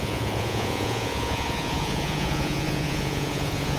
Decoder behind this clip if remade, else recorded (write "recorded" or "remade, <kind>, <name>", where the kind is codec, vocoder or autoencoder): remade, vocoder, Vocos